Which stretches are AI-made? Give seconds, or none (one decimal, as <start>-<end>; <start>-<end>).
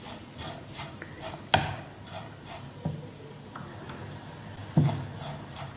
none